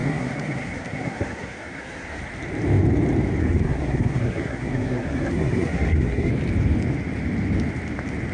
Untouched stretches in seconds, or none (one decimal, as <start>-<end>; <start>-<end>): 2.2-3.4; 6.3-8.3